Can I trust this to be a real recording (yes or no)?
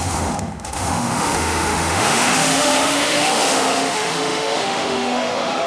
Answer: no